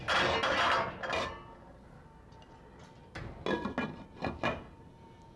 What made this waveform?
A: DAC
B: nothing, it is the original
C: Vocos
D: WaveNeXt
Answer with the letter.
B